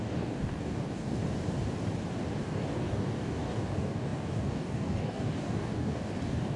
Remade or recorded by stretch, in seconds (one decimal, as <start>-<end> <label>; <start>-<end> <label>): 0.0-1.2 remade; 1.2-2.4 recorded; 2.4-6.6 remade